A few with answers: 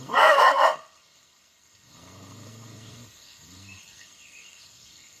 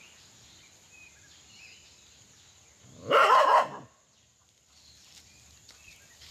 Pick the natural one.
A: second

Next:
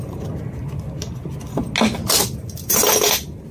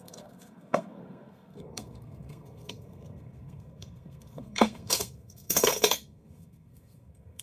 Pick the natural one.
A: first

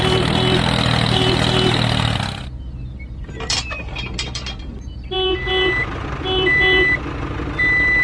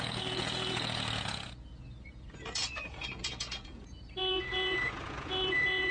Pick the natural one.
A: first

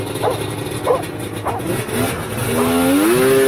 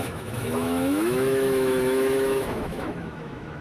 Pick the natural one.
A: first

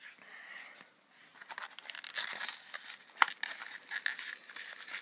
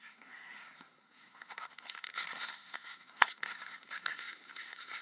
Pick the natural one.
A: first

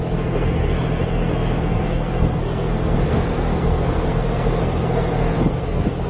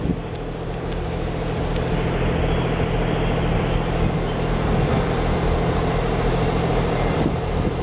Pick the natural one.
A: second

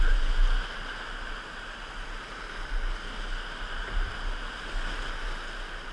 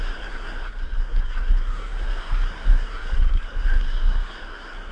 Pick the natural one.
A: first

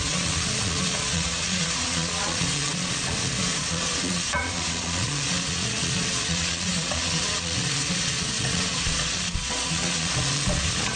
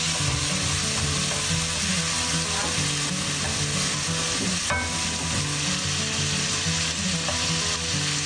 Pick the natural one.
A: second